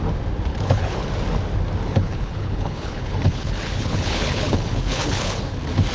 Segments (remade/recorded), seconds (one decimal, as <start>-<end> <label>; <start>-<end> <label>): 0.0-0.5 recorded; 0.5-1.1 remade; 1.1-1.9 recorded; 1.9-5.4 remade; 5.4-5.9 recorded